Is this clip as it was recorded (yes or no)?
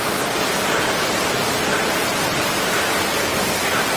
yes